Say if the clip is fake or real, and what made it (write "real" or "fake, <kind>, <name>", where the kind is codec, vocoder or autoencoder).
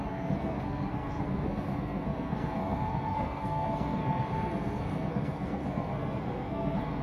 fake, codec, SNAC